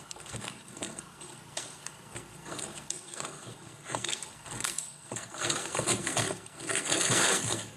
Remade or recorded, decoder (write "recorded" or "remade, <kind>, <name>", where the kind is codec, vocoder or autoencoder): remade, codec, SNAC